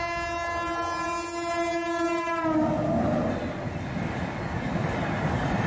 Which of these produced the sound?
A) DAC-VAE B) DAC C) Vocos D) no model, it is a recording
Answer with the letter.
D